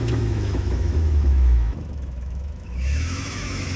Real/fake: fake